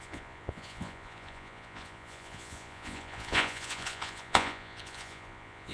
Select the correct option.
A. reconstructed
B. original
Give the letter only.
A